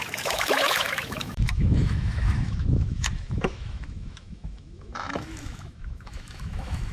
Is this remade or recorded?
remade